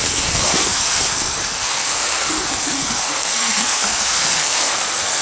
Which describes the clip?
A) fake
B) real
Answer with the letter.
A